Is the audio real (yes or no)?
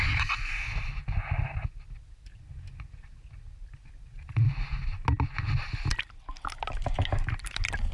yes